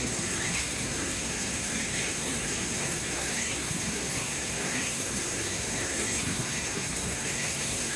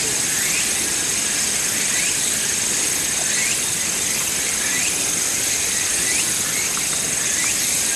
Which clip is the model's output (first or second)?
first